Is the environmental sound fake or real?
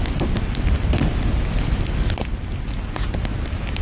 real